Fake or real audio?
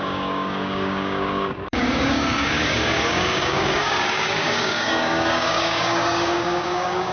fake